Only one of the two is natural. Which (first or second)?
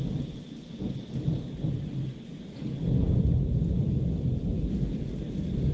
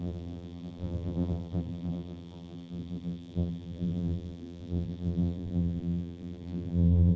first